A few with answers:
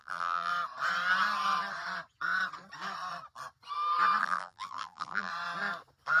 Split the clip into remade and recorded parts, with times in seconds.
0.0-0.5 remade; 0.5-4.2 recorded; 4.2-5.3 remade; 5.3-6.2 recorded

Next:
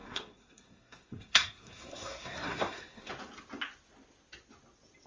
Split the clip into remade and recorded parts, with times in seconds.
0.0-3.1 remade; 3.1-5.1 recorded

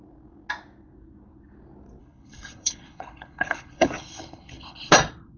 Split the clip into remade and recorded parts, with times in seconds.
0.0-2.0 recorded; 2.0-4.9 remade; 4.9-5.4 recorded

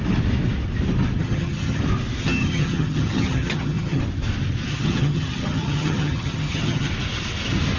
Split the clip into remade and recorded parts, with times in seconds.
0.0-1.2 recorded; 1.2-1.8 remade; 1.8-2.2 recorded; 2.2-4.0 remade; 4.0-4.7 recorded; 4.7-6.9 remade; 6.9-7.8 recorded

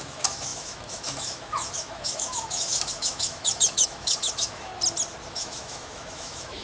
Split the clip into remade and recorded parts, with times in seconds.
0.0-4.7 remade; 4.7-5.3 recorded; 5.3-6.6 remade

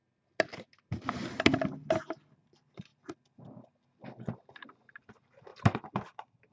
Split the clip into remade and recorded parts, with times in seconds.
0.0-6.5 recorded

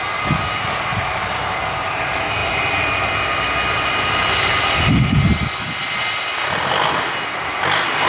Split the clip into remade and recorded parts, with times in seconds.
0.0-8.1 recorded